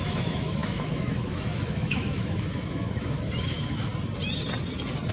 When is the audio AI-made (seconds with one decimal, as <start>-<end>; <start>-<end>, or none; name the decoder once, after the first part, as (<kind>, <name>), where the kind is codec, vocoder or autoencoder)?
0.0-3.9 (autoencoder, DAC-VAE)